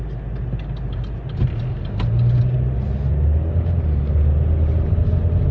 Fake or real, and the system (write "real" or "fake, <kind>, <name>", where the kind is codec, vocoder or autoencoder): real